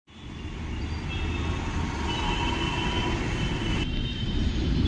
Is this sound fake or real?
real